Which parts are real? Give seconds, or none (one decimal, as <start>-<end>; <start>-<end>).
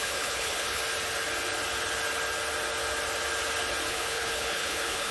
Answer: 0.8-3.9